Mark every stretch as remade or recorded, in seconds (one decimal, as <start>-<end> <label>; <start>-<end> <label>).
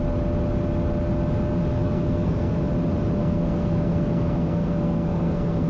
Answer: 0.0-1.8 recorded; 1.8-2.6 remade; 2.6-3.2 recorded; 3.2-5.7 remade